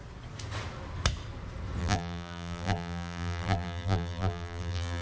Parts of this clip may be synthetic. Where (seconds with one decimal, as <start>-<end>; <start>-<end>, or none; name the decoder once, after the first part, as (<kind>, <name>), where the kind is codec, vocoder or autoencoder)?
1.8-5.0 (vocoder, BigVGAN v2)